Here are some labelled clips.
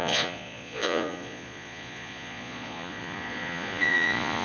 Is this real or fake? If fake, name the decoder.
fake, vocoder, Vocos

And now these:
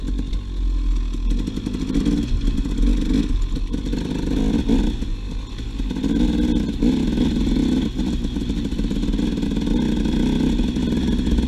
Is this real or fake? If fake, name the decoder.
real